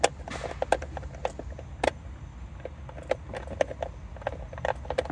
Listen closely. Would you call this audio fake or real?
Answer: real